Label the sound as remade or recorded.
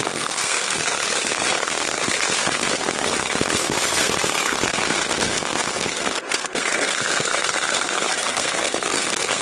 remade